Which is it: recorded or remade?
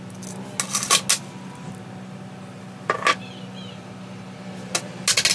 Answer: recorded